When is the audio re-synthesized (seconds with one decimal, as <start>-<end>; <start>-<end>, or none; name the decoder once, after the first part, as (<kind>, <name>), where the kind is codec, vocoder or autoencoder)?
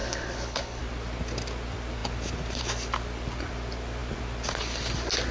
0.0-0.8 (codec, HILCodec)